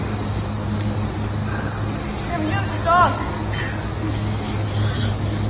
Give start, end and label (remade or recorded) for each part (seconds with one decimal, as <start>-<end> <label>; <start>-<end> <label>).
0.0-5.5 recorded